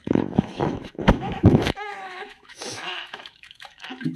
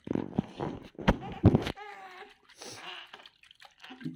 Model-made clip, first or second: first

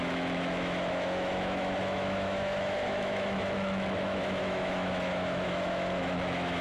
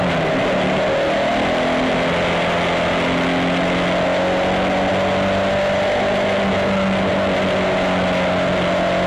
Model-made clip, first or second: first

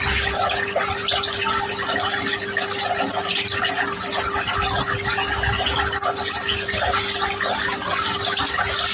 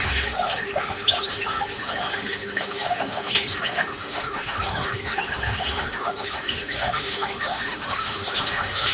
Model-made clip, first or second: second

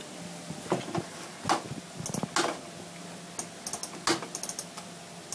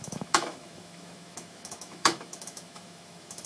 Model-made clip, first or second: second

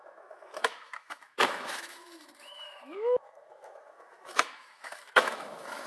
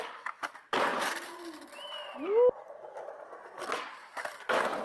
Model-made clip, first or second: first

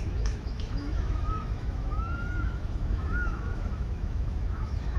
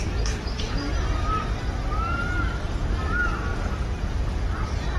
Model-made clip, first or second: first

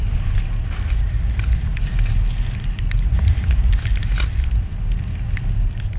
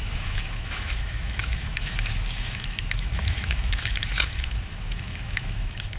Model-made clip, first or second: second